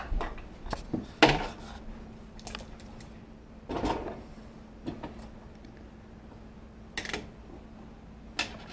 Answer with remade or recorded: recorded